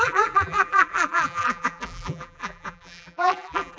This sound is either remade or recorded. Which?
remade